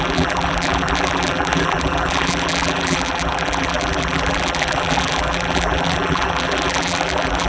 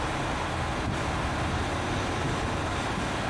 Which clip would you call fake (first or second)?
first